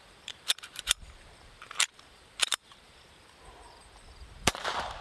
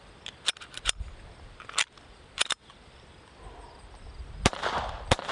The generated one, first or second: first